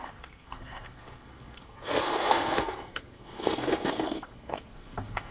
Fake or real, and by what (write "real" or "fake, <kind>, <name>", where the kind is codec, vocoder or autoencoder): fake, codec, SNAC